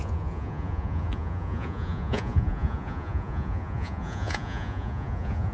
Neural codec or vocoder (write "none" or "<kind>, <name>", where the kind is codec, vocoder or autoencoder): vocoder, Vocos